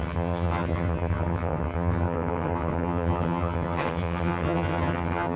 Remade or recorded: remade